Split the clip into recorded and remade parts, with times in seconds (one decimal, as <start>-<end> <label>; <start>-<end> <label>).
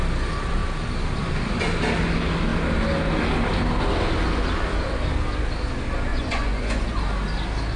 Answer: 0.0-6.1 recorded; 6.1-7.0 remade; 7.0-7.8 recorded